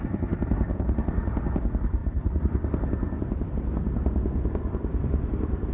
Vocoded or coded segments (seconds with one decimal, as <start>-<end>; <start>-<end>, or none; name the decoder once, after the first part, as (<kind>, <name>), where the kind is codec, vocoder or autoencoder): none